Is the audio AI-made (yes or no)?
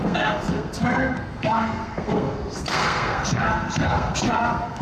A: yes